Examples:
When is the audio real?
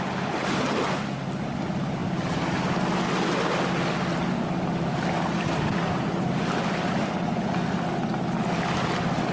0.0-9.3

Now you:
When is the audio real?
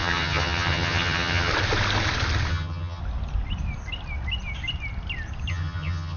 1.5-2.5; 3.0-5.5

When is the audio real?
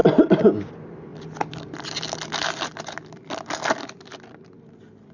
0.0-5.1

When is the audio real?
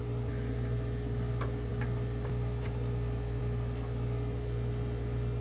0.0-5.4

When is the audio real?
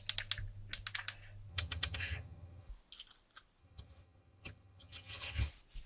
0.0-1.5; 2.7-3.6; 5.5-5.9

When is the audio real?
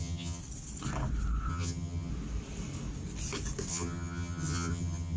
0.4-1.5; 2.1-3.7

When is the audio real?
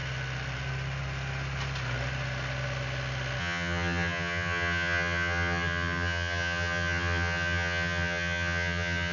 0.0-3.4